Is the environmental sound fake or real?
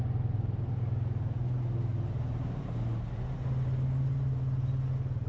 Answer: real